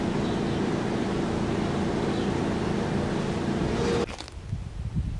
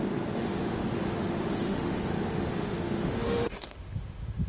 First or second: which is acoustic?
first